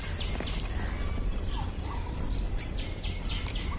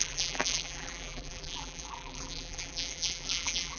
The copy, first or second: second